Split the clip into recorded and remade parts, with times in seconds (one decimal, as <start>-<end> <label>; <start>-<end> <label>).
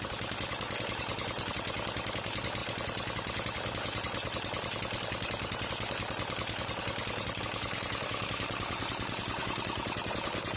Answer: 0.0-10.6 recorded